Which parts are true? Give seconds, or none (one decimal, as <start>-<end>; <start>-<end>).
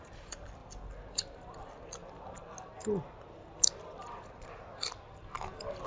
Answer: 0.6-1.5; 2.0-5.5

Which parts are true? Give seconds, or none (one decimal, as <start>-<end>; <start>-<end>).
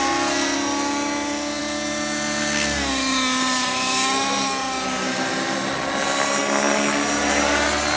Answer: 0.0-8.0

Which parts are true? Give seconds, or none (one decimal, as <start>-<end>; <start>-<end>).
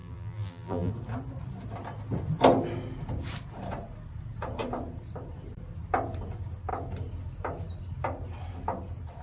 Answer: 0.9-9.2